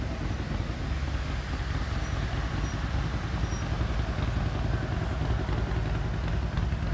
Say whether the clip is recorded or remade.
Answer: recorded